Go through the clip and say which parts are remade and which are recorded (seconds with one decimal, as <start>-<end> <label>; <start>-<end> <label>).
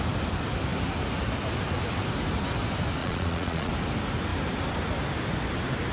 0.0-3.0 recorded; 3.0-3.7 remade; 3.7-5.9 recorded